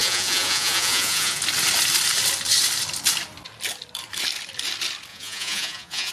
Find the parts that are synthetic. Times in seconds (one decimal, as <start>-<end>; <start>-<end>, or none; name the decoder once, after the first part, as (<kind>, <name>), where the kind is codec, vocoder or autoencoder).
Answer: 0.0-1.4 (vocoder, Vocos); 5.1-6.1